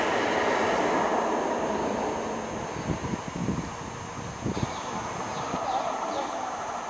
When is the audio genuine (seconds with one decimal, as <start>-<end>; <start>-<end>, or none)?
0.0-6.9